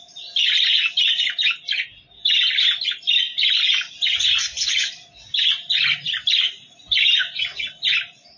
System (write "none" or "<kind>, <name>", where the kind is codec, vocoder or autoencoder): none